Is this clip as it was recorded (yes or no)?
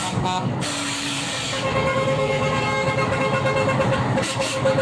no